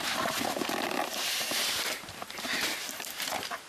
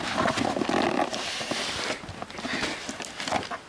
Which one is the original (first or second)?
second